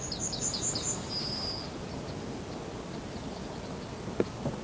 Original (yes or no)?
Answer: yes